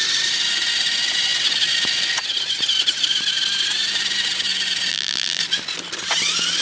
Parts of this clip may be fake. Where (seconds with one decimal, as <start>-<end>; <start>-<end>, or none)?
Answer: 4.9-5.4

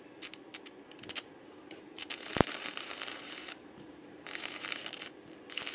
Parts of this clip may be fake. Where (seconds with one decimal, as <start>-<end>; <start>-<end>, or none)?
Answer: 1.4-4.8

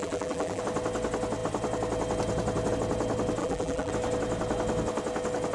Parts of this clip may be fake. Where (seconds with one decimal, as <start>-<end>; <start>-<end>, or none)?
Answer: 0.0-0.6; 3.4-3.9